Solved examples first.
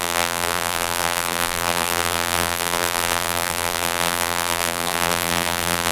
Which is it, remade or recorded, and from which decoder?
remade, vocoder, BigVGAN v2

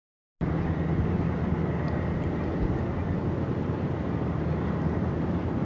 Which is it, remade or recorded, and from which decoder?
recorded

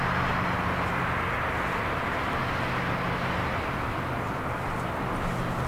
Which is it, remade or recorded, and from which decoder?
recorded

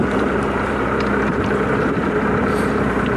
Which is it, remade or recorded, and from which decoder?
remade, vocoder, BigVGAN v2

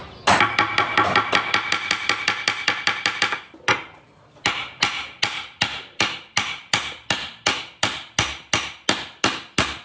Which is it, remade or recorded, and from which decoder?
recorded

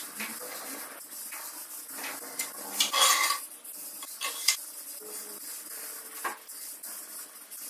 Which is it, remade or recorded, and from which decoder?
recorded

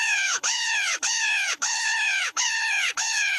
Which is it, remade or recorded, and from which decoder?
remade, codec, HILCodec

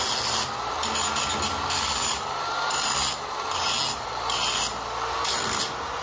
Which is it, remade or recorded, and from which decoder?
recorded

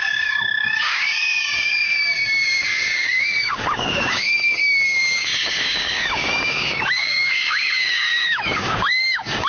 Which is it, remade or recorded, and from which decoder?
remade, codec, DAC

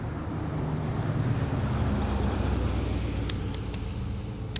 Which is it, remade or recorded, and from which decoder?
recorded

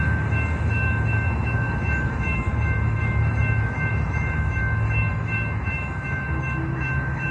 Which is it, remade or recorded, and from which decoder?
remade, autoencoder, DAC-VAE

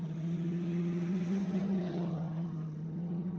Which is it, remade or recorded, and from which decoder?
remade, vocoder, HiFi-GAN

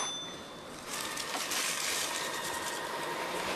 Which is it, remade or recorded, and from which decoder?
recorded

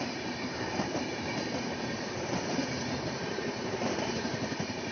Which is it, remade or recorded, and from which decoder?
remade, vocoder, BigVGAN v2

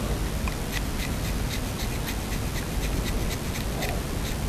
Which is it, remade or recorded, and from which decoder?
recorded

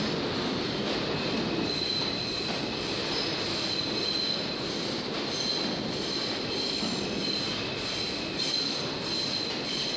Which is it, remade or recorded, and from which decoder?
recorded